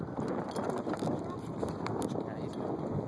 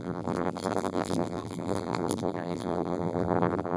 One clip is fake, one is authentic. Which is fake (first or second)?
second